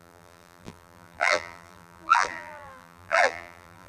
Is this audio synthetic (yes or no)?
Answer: yes